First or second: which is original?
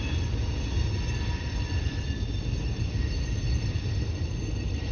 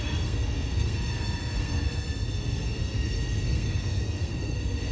first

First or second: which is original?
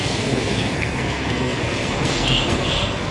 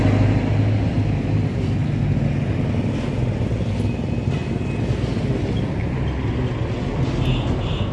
second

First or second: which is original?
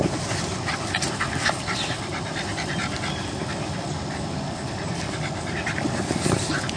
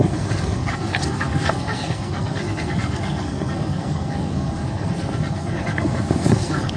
first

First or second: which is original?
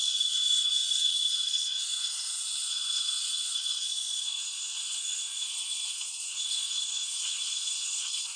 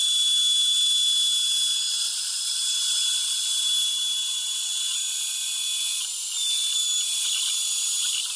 second